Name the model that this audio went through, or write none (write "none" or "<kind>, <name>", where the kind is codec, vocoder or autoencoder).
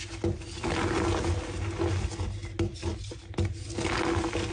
none